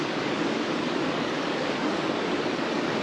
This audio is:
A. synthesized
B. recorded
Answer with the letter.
A